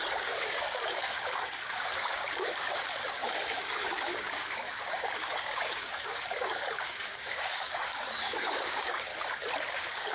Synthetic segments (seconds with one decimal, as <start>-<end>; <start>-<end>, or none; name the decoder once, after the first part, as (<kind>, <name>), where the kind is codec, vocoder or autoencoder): 0.0-9.1 (codec, DAC); 9.7-10.1